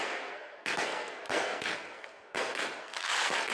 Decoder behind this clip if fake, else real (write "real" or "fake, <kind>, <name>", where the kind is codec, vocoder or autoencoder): fake, codec, SNAC